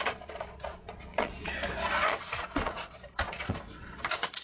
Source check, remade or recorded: remade